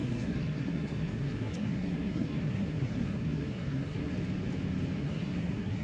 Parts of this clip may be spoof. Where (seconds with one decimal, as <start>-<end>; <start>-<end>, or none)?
0.0-4.1; 5.0-5.8